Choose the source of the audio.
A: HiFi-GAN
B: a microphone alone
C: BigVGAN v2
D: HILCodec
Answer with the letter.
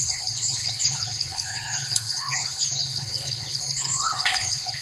D